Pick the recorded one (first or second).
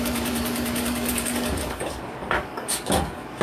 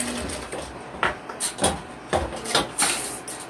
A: second